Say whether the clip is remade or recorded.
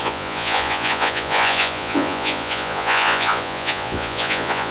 remade